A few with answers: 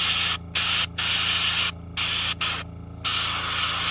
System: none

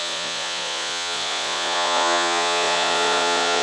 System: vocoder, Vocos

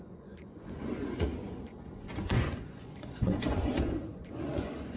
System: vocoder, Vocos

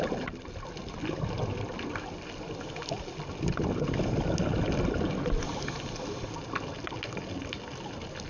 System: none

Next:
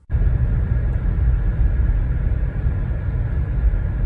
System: none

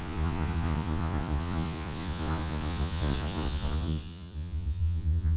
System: vocoder, Vocos